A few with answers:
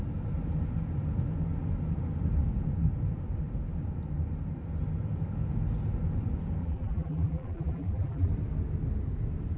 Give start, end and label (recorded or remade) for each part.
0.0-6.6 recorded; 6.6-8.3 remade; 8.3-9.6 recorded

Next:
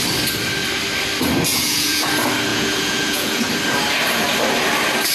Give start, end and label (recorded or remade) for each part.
0.0-1.5 recorded; 1.5-2.1 remade; 2.1-2.5 recorded; 2.5-3.4 remade; 3.4-5.1 recorded

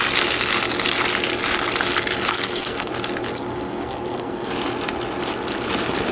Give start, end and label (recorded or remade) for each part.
0.0-2.3 recorded; 2.3-2.9 remade; 2.9-3.3 recorded; 3.3-4.5 remade; 4.5-6.1 recorded

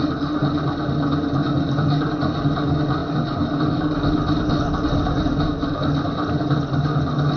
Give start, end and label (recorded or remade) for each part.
0.0-7.4 recorded